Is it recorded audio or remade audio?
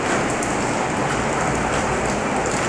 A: recorded